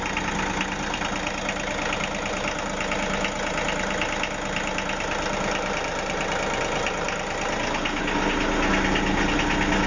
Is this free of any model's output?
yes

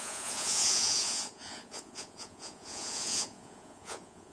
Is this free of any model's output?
no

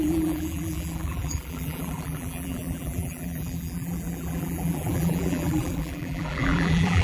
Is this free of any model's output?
no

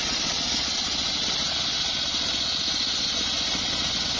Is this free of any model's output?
yes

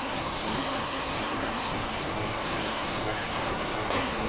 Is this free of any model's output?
no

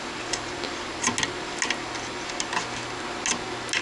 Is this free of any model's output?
yes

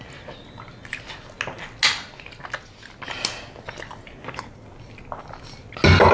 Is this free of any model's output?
yes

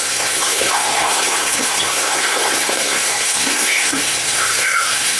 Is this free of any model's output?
no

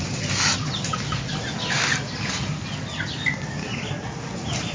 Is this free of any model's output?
yes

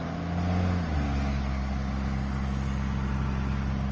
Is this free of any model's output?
yes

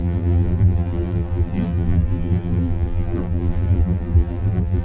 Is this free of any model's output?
no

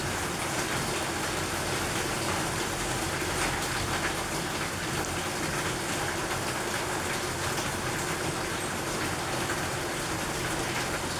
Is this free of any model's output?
yes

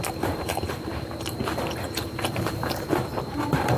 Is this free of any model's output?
no